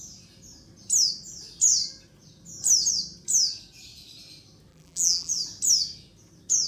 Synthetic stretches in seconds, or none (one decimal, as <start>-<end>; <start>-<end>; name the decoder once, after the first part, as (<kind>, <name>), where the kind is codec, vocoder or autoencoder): 4.7-5.3 (vocoder, BigVGAN v2)